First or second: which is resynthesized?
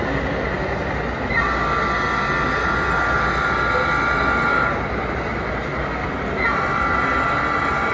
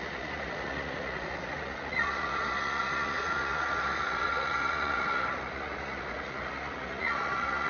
second